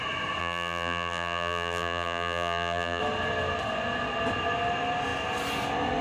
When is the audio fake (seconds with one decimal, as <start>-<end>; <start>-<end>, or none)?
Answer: 0.4-3.0